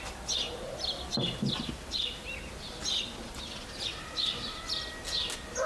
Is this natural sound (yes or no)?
yes